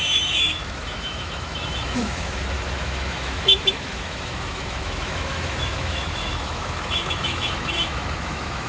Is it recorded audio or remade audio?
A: remade